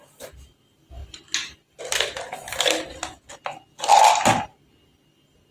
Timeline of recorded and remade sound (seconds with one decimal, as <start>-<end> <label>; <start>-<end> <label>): 0.0-5.5 recorded

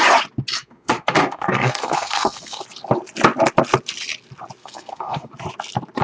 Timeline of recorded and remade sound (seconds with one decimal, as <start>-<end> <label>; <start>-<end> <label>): 0.0-0.6 recorded; 0.6-2.6 remade; 2.6-4.6 recorded; 4.6-5.3 remade; 5.3-6.0 recorded

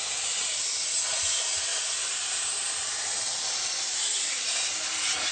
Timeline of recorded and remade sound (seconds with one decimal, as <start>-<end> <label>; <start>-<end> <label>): 0.0-5.3 recorded

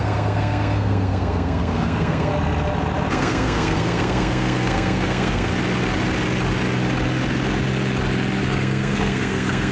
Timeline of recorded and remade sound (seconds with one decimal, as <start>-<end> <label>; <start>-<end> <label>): 0.0-2.3 remade; 2.3-3.1 recorded; 3.1-5.5 remade; 5.5-8.4 recorded; 8.4-9.7 remade

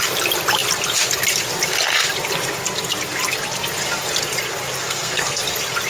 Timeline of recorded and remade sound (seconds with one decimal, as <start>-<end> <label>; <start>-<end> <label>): 0.0-4.8 recorded; 4.8-5.4 remade; 5.4-5.9 recorded

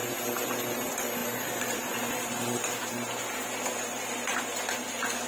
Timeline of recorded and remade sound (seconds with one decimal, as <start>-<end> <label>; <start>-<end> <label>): 0.0-5.3 recorded

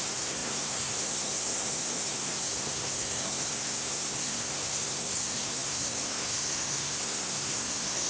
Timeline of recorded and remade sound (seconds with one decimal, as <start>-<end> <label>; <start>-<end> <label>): 0.0-8.1 remade